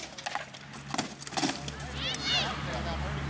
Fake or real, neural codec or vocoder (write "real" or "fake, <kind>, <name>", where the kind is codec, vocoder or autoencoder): real